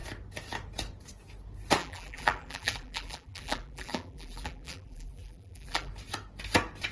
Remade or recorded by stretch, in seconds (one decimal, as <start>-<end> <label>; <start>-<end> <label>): 0.0-1.8 recorded; 1.8-5.9 remade; 5.9-6.9 recorded